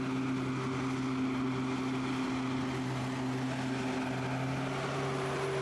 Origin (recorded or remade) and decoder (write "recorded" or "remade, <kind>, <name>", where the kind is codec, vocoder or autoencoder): recorded